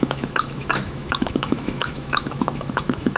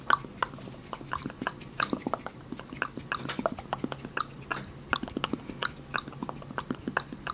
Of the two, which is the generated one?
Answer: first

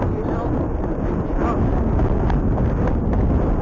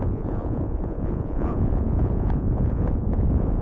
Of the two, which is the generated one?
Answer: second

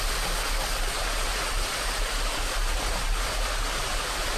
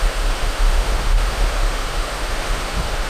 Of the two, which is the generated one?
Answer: second